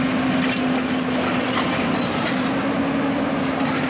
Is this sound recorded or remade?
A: recorded